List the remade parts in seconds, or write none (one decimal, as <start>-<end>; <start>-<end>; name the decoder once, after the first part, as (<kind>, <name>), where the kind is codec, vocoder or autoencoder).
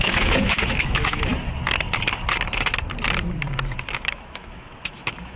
0.0-1.3 (autoencoder, DAC-VAE); 3.9-5.4